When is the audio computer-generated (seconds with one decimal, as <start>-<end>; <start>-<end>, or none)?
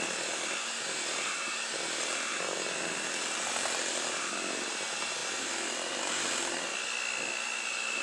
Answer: none